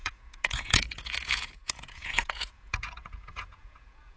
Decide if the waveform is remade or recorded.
remade